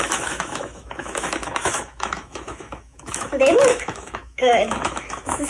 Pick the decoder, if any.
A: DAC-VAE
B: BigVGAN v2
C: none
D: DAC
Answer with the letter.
A